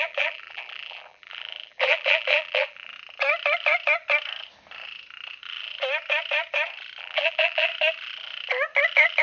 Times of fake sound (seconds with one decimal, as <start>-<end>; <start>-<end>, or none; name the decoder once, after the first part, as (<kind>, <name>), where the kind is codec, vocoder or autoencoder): 0.0-2.9 (vocoder, BigVGAN v2); 7.0-7.7